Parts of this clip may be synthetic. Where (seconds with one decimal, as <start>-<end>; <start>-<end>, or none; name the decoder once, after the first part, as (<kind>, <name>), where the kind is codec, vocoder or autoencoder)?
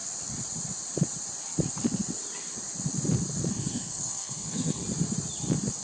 3.5-4.8 (codec, SNAC)